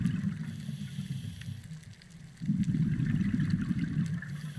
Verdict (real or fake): real